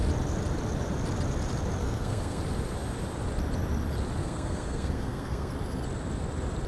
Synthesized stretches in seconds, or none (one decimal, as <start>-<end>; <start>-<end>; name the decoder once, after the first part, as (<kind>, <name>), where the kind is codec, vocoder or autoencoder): 1.8-2.4 (codec, SNAC); 4.2-5.5